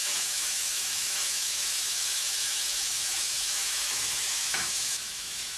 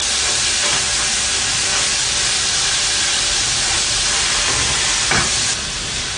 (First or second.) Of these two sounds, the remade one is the first